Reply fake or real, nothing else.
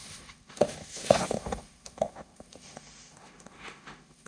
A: fake